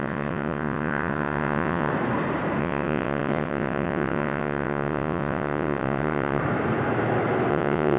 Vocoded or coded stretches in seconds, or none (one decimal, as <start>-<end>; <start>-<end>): 0.0-1.9; 2.6-6.4; 7.5-8.0